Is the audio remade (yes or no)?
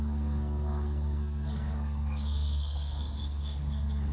yes